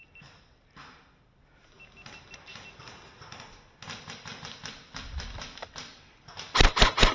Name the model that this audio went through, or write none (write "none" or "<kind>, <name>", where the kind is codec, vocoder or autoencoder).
none